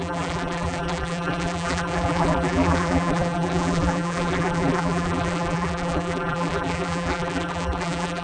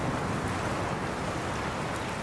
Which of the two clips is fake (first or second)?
first